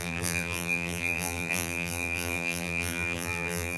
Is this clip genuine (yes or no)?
no